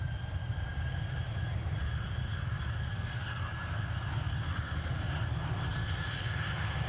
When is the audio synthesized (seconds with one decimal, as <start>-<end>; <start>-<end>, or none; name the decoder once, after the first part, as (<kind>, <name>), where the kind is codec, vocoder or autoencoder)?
none